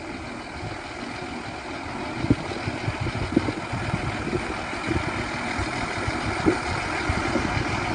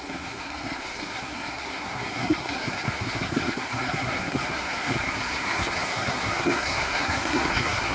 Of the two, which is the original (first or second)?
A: first